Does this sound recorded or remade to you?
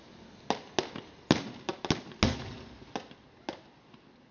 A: recorded